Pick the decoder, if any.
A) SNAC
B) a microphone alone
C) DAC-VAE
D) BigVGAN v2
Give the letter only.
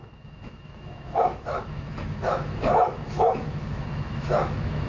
C